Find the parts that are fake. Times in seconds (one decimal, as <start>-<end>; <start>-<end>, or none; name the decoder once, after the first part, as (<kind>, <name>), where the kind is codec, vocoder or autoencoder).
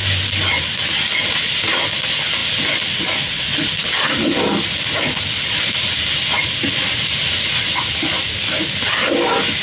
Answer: none